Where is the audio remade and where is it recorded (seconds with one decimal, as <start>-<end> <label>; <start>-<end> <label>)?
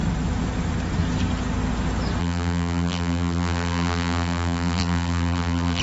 0.0-2.2 recorded; 2.2-5.8 remade